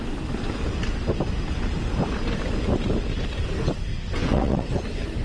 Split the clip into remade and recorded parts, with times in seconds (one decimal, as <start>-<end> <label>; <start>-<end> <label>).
0.0-3.9 recorded; 3.9-4.7 remade; 4.7-5.2 recorded